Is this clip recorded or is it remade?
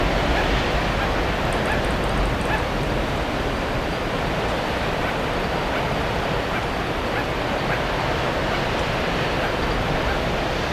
recorded